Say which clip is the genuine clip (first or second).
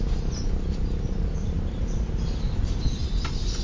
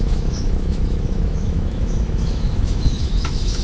first